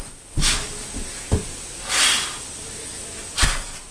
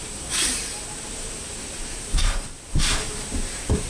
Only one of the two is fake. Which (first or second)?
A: second